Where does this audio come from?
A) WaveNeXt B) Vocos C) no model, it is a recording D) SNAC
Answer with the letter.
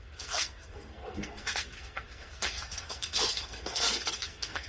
D